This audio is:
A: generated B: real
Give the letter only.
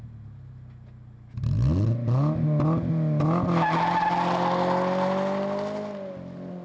B